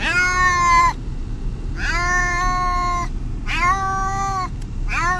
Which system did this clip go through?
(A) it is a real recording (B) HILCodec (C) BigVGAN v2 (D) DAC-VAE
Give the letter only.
A